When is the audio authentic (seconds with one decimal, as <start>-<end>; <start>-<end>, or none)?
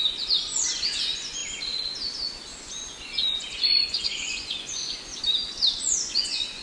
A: 1.4-2.6; 5.1-5.7